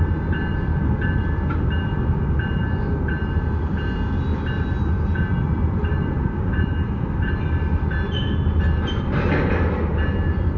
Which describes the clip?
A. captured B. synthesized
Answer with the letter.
A